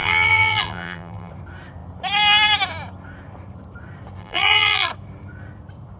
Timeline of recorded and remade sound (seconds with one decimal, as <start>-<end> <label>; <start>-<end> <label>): 0.0-1.3 remade; 1.3-4.2 recorded; 4.2-4.9 remade; 4.9-6.0 recorded